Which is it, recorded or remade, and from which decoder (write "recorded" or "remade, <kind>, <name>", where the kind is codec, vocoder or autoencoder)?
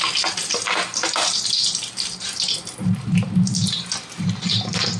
recorded